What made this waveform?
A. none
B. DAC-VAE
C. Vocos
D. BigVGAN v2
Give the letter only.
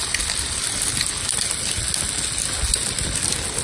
A